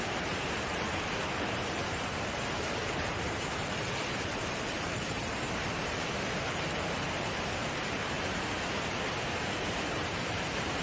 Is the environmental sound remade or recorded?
remade